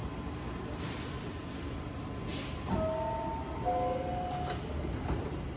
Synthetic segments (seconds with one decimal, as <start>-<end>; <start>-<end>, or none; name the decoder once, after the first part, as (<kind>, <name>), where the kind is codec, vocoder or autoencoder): 0.7-2.3 (vocoder, BigVGAN v2); 5.0-5.6